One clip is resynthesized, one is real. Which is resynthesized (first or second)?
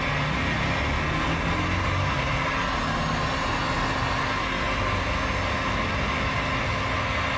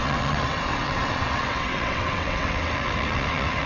second